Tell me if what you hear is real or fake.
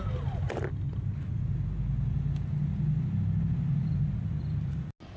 real